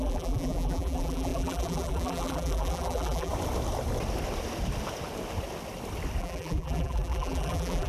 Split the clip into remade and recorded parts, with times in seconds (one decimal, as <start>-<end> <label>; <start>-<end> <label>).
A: 0.0-3.3 remade; 3.3-6.2 recorded; 6.2-7.9 remade